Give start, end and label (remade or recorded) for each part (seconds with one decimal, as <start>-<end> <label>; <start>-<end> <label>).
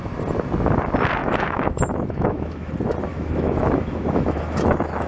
0.0-1.2 recorded; 1.2-2.7 remade; 2.7-3.1 recorded; 3.1-5.1 remade